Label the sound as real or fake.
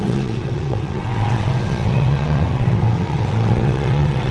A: fake